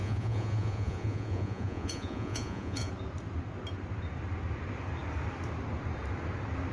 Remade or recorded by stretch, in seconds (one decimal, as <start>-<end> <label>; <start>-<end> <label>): 0.0-2.9 remade; 2.9-6.7 recorded